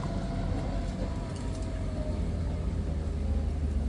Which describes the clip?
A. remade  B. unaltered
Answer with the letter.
B